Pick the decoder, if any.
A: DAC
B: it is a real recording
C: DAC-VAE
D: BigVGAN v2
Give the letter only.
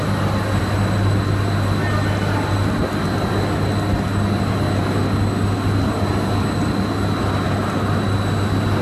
B